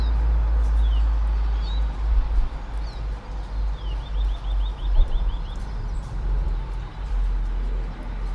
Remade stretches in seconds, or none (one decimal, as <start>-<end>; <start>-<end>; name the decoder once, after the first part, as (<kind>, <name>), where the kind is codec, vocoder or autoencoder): 4.7-7.1 (vocoder, BigVGAN v2)